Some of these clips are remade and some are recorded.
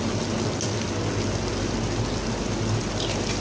recorded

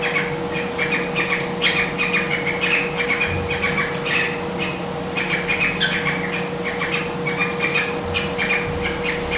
recorded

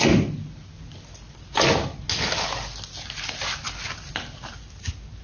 recorded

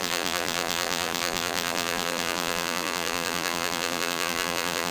remade